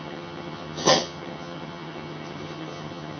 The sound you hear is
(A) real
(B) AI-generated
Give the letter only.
B